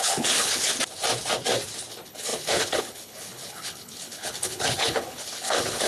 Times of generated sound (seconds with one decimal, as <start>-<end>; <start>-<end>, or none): 0.0-0.7; 1.9-5.9